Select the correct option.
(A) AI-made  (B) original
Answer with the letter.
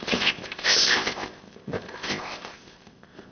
A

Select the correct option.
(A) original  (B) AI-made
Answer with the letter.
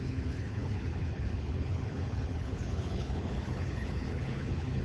B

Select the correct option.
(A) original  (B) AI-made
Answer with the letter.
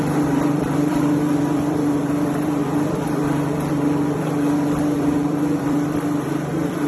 B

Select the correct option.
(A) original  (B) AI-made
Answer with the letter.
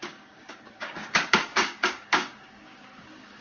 B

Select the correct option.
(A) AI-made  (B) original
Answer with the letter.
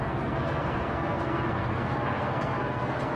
A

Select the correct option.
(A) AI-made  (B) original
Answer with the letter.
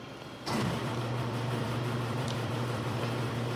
A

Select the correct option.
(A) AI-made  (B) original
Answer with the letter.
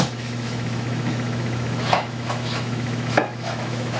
A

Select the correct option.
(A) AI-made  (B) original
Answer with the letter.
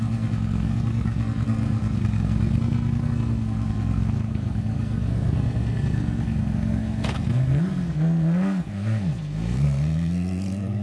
A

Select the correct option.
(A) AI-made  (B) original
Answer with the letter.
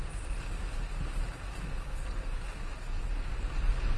B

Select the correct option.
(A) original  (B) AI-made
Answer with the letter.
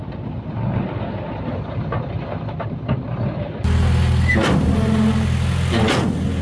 A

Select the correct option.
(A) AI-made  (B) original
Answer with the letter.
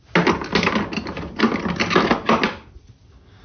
B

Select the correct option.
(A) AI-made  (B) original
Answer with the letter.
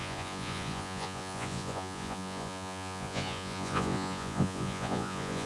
A